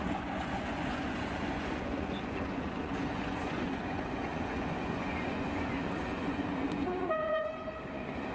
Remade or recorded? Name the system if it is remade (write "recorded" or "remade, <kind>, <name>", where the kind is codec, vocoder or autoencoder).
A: remade, vocoder, Vocos